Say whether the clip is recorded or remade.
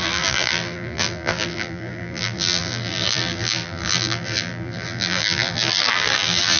remade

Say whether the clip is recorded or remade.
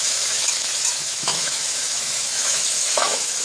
remade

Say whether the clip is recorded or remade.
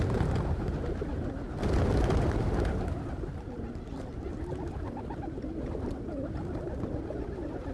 recorded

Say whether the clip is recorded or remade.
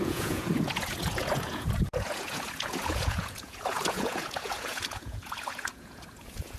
remade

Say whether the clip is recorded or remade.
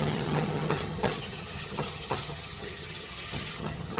remade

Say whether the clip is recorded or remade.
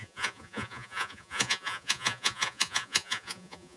remade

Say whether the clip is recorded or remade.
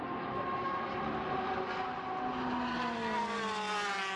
recorded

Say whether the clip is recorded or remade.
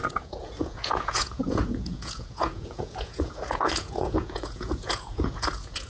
remade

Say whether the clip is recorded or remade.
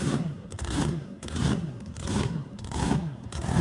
remade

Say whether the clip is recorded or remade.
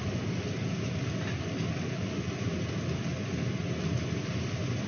recorded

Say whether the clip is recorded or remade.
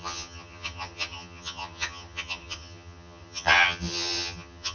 remade